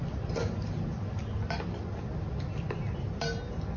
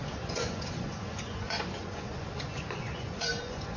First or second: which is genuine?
first